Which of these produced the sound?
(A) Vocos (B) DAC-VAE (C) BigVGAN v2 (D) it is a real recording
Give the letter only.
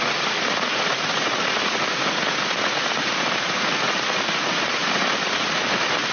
A